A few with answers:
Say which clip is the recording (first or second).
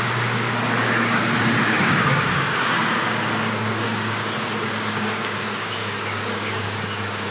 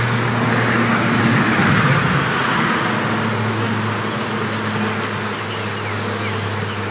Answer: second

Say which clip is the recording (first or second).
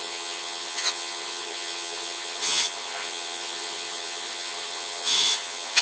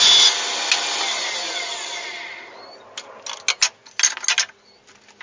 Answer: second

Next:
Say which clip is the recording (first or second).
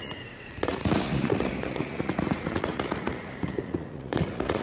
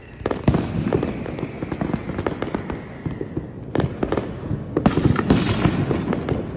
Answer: second